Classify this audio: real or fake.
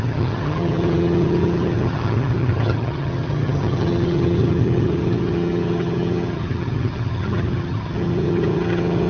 fake